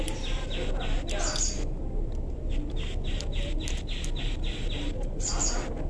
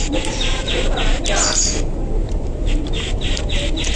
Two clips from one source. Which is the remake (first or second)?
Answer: second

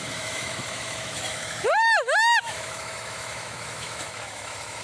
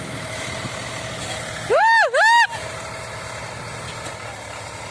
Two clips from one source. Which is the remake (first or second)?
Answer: first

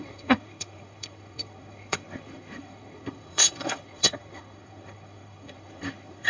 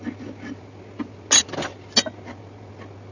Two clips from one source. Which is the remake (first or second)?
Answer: first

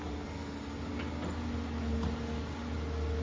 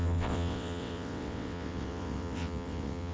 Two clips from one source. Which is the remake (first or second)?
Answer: second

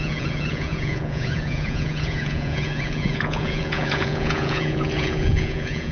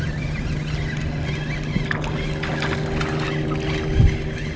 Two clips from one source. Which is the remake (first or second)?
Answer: first